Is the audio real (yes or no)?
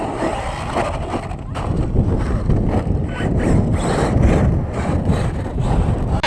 yes